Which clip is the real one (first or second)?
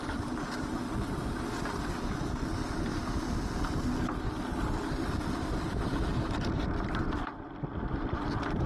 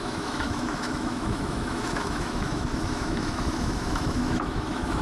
first